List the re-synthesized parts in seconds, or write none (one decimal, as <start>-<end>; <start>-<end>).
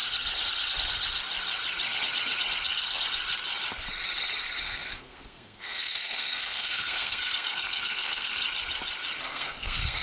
4.6-8.4; 9.3-10.0